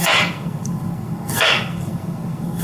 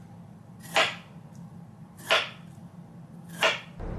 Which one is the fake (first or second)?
first